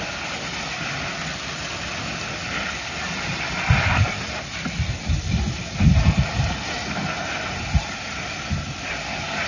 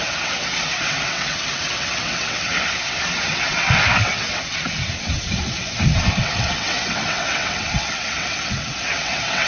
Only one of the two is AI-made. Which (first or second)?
second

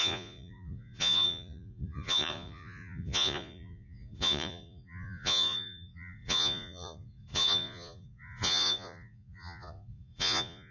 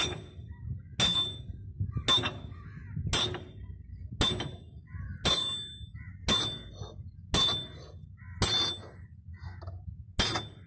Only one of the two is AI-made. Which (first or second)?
first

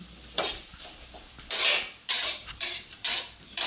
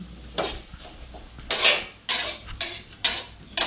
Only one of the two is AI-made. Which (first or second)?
first